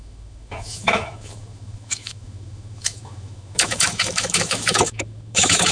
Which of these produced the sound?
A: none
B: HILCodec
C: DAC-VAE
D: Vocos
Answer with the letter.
C